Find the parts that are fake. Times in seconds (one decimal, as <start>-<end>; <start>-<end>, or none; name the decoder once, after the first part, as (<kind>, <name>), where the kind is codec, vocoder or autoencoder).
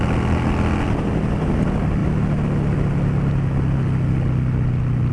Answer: none